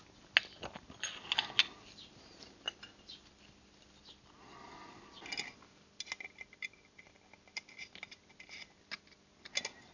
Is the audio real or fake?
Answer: real